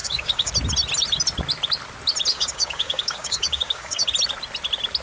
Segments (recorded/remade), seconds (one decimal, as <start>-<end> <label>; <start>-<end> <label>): 0.0-0.5 remade; 0.5-2.3 recorded; 2.3-4.1 remade; 4.1-5.0 recorded